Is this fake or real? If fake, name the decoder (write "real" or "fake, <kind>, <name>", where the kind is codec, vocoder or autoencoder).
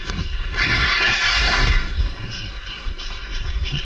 fake, codec, SNAC